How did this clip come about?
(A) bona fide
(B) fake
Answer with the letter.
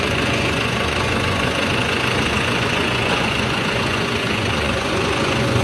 B